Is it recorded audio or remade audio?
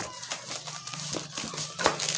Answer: recorded